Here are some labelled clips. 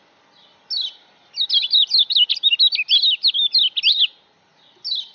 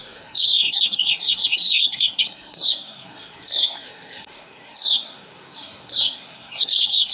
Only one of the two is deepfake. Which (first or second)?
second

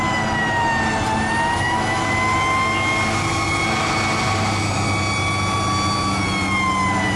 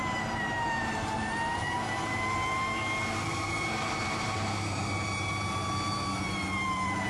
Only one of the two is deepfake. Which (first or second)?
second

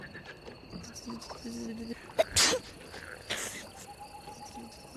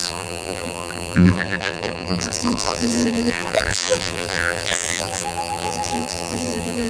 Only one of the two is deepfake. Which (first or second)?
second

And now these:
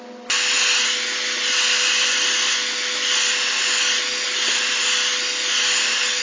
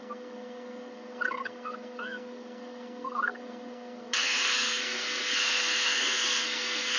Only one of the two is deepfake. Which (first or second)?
second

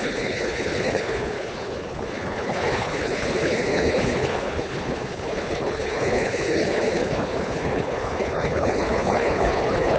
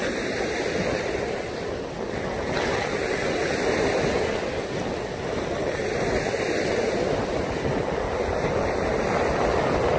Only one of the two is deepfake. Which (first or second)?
first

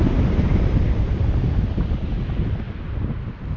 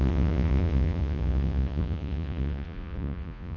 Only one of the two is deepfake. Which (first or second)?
second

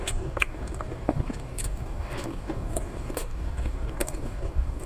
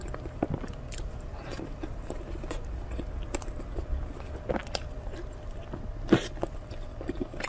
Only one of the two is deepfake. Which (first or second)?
first